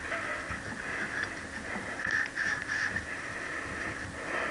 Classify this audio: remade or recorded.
recorded